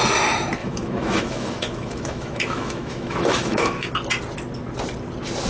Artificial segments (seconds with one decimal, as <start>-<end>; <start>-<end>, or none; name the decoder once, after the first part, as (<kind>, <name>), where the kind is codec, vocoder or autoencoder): 0.6-3.9 (autoencoder, DAC-VAE)